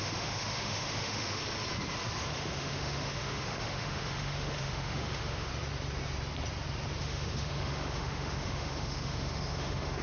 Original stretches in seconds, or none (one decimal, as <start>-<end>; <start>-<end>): 1.4-2.3; 5.5-7.0